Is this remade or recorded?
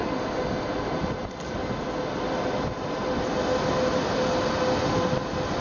recorded